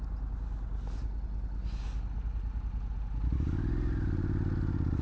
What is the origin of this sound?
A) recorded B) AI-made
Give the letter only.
A